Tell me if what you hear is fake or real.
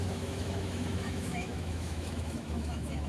fake